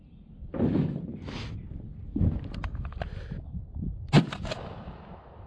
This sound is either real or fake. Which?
real